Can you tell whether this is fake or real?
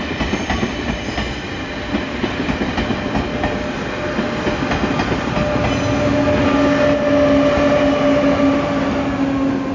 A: real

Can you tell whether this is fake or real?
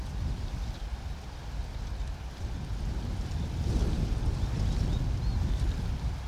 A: fake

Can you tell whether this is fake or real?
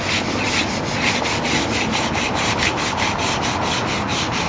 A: real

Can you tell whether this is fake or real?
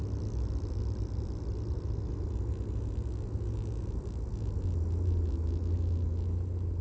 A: real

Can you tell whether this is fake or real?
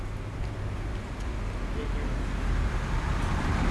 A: real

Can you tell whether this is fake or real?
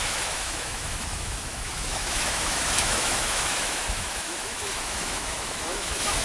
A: fake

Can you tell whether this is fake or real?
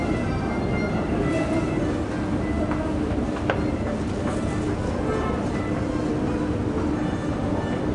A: real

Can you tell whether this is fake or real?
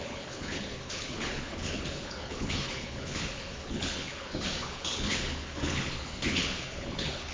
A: fake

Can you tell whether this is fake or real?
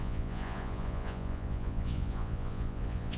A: fake